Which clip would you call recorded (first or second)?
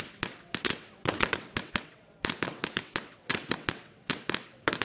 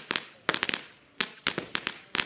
second